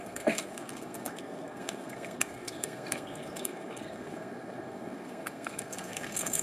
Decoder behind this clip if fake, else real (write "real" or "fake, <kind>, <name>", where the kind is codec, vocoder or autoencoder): fake, codec, SNAC